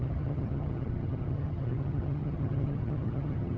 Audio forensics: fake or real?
fake